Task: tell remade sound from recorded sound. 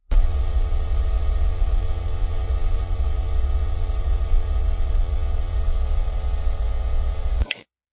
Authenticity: remade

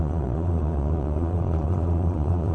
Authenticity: remade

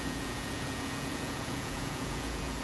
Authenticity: remade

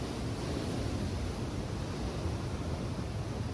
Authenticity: recorded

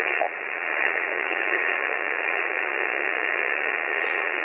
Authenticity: remade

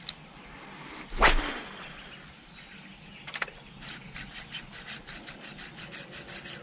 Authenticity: recorded